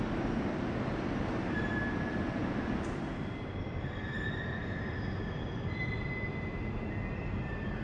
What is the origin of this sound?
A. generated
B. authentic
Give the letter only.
B